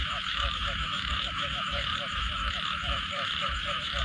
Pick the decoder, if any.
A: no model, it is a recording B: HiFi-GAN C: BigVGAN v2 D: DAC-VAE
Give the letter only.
D